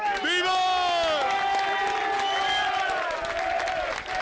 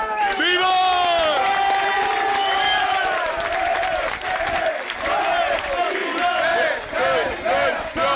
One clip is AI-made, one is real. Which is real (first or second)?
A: first